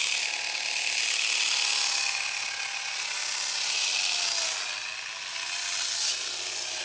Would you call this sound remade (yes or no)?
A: no